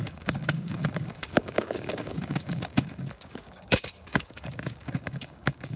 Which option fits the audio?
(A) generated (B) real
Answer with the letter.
A